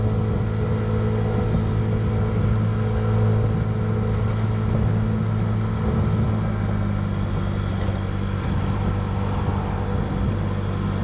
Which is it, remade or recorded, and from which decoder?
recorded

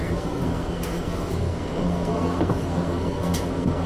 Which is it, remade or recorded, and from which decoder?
remade, codec, SNAC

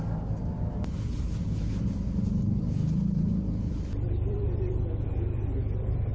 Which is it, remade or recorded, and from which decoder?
recorded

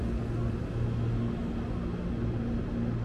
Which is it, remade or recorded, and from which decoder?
recorded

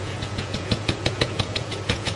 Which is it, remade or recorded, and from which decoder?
remade, vocoder, Vocos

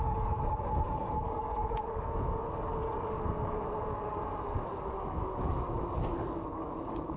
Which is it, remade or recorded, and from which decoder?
remade, codec, DAC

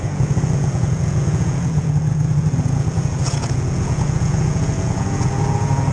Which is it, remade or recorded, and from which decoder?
remade, vocoder, Vocos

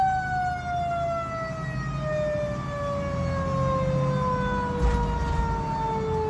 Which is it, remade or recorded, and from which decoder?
recorded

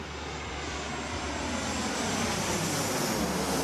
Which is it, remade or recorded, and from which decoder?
recorded